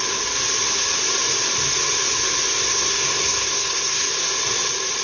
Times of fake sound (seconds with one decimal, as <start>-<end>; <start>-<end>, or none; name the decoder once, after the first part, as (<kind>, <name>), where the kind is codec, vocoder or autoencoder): 2.7-4.1 (codec, SNAC)